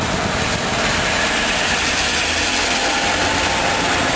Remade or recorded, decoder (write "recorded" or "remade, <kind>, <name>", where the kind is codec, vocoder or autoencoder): recorded